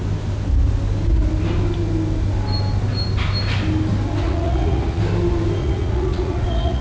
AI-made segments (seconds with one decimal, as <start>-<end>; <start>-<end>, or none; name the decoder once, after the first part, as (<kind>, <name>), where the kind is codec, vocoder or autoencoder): 4.2-5.0 (vocoder, Vocos); 5.6-6.8